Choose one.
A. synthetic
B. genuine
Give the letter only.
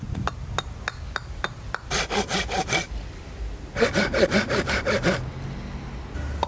B